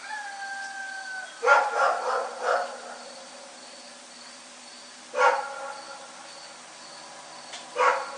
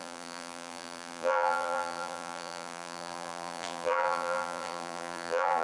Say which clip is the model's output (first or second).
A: second